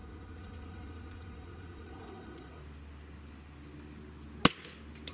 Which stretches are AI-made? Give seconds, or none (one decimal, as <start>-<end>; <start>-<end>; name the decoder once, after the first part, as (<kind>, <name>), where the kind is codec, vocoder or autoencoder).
0.0-2.6 (vocoder, Vocos)